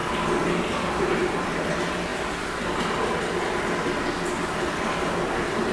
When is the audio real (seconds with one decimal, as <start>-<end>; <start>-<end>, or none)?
0.0-1.2; 1.7-5.7